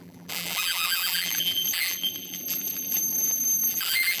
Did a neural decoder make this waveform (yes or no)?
yes